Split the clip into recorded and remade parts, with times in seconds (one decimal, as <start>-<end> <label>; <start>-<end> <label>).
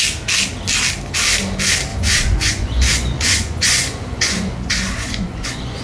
0.0-1.9 recorded; 1.9-5.8 remade